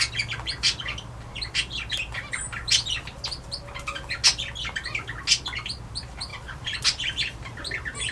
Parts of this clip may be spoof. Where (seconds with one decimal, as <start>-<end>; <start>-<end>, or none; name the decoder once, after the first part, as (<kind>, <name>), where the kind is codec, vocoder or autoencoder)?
6.3-7.4 (vocoder, BigVGAN v2)